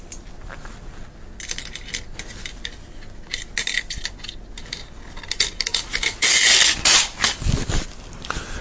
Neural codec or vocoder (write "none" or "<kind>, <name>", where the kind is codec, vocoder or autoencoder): none